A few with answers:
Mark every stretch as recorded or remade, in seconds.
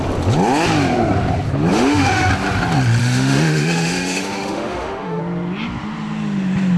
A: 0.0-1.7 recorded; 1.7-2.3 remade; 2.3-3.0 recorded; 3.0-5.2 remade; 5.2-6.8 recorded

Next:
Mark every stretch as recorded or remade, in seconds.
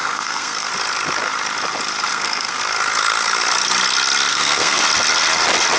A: 0.0-0.7 remade; 0.7-2.1 recorded; 2.1-2.6 remade; 2.6-4.3 recorded; 4.3-4.8 remade; 4.8-5.8 recorded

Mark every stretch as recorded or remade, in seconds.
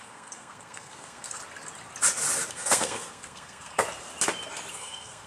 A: 0.0-1.4 remade; 1.4-2.5 recorded; 2.5-3.8 remade; 3.8-4.7 recorded; 4.7-5.3 remade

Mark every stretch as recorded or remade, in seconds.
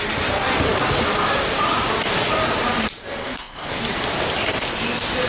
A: 0.0-3.2 recorded; 3.2-3.8 remade; 3.8-5.3 recorded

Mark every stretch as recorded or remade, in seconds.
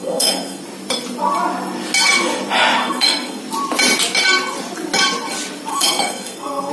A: 0.0-0.6 remade; 0.6-2.8 recorded; 2.8-3.4 remade; 3.4-5.7 recorded; 5.7-6.7 remade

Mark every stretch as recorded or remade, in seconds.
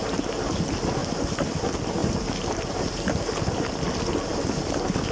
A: 0.0-1.0 recorded; 1.0-1.6 remade; 1.6-5.1 recorded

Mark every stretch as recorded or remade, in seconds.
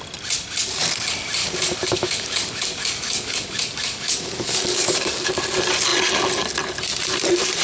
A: 0.0-1.4 recorded; 1.4-5.3 remade; 5.3-7.6 recorded